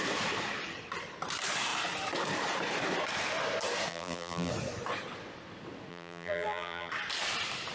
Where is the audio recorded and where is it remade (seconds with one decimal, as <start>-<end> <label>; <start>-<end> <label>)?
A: 0.0-3.9 recorded; 3.9-4.5 remade; 4.5-5.9 recorded; 5.9-6.9 remade; 6.9-7.7 recorded